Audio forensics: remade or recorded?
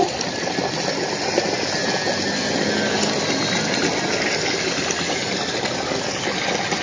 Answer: recorded